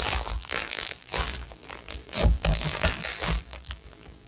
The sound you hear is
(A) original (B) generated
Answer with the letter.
B